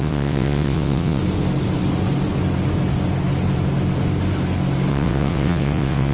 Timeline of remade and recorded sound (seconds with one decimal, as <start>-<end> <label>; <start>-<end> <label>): 0.0-1.2 remade; 1.2-4.9 recorded; 4.9-6.1 remade